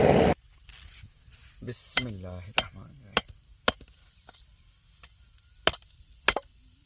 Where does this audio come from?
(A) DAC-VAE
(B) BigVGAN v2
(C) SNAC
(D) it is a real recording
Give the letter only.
B